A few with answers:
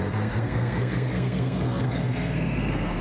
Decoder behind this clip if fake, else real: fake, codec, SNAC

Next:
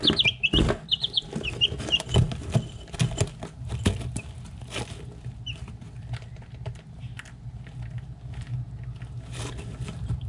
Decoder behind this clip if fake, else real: real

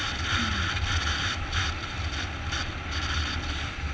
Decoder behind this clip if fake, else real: real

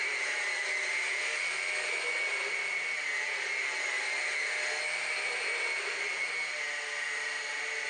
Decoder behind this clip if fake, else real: real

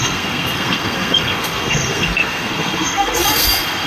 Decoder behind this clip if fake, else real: fake, codec, SNAC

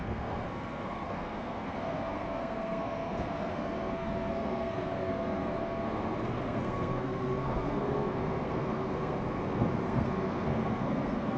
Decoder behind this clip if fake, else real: fake, codec, SNAC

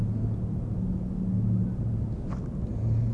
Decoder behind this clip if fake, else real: real